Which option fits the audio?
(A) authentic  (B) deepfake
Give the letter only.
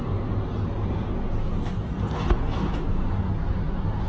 A